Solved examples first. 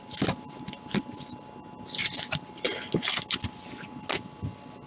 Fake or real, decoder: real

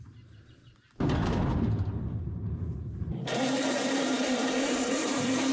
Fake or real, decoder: fake, vocoder, BigVGAN v2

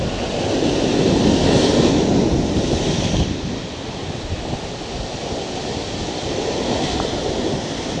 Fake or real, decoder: real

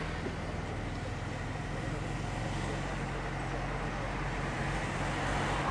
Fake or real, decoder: real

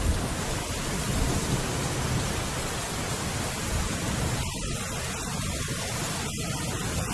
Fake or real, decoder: real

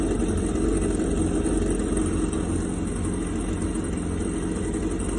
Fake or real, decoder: real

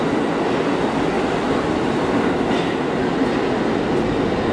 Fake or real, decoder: real